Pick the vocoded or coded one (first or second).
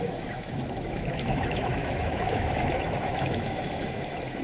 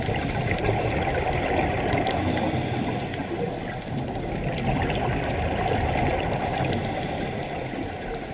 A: first